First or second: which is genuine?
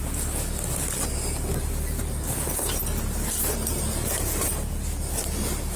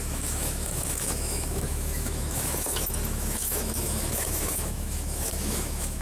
first